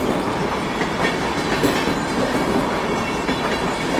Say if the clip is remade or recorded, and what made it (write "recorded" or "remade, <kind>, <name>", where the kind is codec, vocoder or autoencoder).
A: recorded